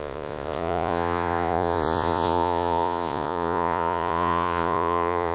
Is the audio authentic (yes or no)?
no